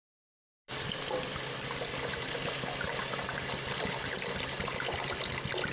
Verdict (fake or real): real